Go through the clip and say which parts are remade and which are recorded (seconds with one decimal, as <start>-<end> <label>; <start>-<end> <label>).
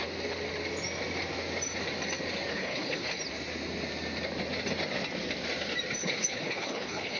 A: 0.0-2.5 recorded; 2.5-3.2 remade; 3.2-6.0 recorded; 6.0-7.2 remade